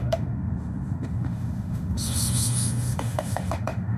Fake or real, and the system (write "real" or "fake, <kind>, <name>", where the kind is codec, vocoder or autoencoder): fake, autoencoder, DAC-VAE